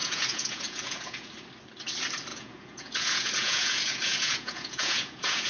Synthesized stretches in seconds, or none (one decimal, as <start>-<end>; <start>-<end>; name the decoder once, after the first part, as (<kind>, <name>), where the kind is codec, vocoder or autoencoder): 0.0-1.3 (vocoder, Vocos); 2.3-5.5